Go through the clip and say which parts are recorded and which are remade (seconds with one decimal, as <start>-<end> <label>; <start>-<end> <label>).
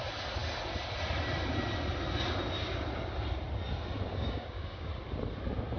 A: 0.0-4.1 recorded; 4.1-4.9 remade; 4.9-5.8 recorded